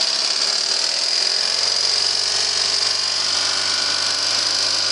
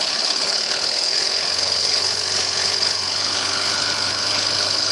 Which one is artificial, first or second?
second